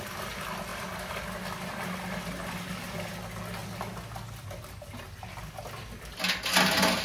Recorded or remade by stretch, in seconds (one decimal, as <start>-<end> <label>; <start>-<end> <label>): 0.0-7.0 recorded